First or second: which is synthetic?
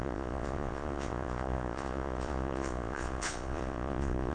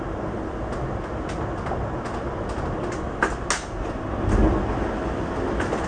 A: first